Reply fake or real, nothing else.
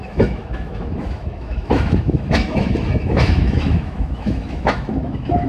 fake